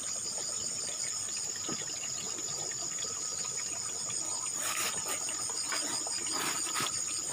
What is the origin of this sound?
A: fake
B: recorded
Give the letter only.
B